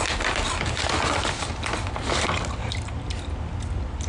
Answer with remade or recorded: recorded